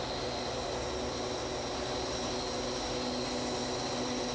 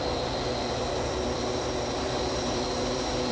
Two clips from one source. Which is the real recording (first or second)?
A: first